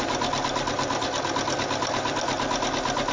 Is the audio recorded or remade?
recorded